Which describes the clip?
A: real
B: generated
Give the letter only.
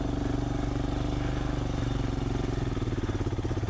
A